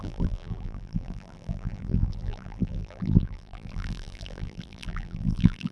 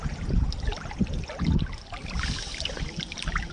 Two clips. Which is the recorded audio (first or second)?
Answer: second